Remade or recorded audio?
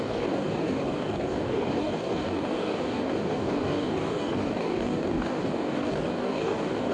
remade